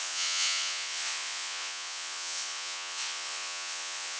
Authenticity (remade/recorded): remade